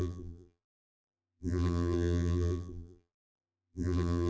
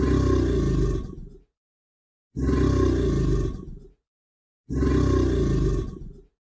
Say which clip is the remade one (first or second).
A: first